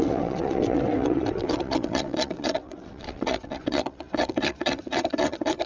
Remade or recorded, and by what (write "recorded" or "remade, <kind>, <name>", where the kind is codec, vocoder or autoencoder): remade, vocoder, WaveNeXt